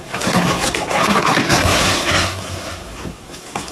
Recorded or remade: remade